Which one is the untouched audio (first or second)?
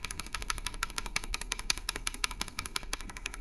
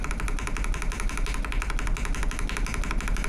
second